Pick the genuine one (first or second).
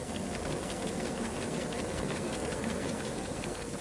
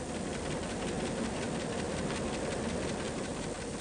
second